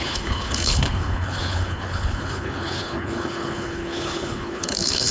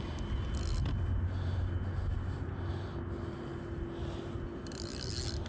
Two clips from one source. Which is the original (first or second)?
second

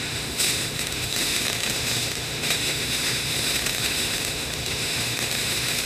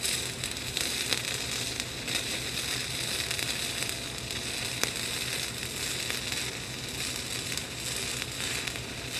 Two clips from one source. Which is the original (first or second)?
second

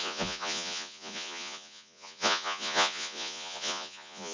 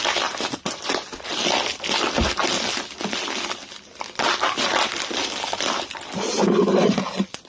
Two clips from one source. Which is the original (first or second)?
second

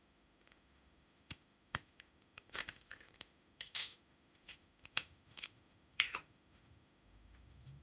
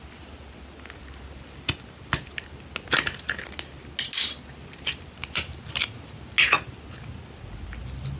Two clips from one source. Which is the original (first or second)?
second